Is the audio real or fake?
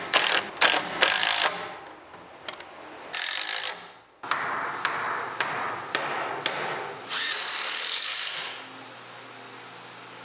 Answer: real